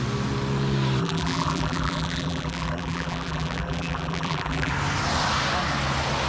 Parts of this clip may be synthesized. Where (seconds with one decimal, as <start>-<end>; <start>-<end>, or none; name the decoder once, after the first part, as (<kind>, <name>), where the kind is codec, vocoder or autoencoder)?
1.0-4.7 (vocoder, BigVGAN v2)